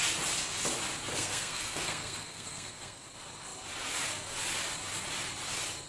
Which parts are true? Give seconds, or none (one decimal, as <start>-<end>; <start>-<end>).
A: 0.0-1.1; 3.1-5.9